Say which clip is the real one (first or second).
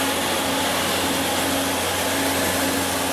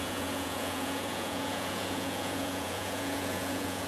first